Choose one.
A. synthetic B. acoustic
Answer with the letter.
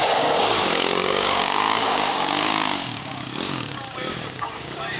A